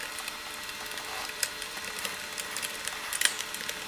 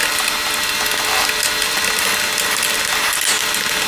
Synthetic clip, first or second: first